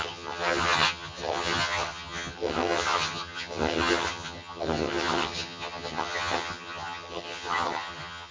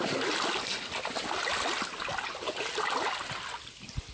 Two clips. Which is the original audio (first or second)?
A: second